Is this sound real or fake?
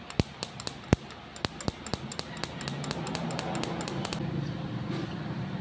real